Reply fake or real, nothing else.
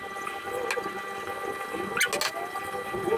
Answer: real